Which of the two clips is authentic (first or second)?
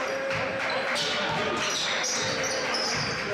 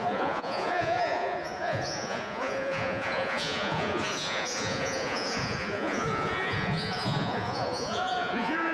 first